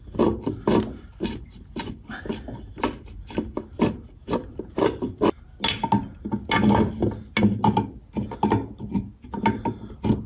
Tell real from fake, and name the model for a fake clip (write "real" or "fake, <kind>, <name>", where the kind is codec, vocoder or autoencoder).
real